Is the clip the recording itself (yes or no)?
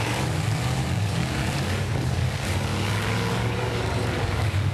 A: no